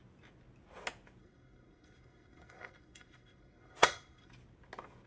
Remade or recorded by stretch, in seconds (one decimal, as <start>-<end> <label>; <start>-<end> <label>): 0.0-1.2 recorded; 1.2-4.3 remade; 4.3-5.1 recorded